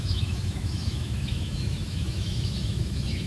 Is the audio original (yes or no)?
no